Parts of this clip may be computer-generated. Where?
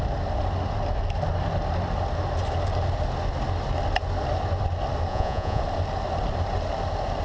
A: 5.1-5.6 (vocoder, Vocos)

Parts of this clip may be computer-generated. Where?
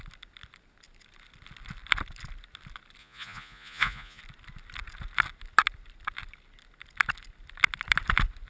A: 3.0-4.2 (vocoder, Vocos)